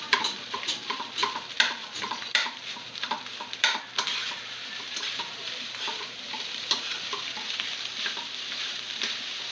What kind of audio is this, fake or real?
fake